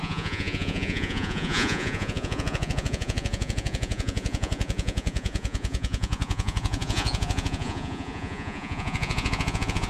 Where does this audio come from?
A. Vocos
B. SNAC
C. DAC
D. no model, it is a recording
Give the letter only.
A